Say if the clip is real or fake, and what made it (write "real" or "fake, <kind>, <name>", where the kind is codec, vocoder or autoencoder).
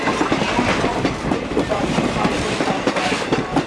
real